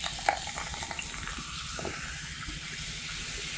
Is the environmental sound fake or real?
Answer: real